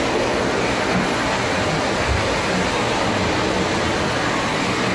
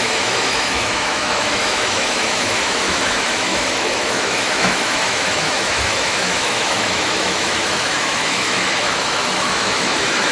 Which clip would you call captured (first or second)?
first